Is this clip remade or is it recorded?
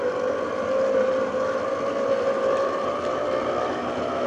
recorded